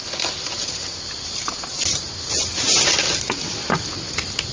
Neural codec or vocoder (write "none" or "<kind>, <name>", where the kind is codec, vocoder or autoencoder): none